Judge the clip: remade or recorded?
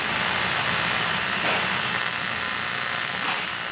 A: recorded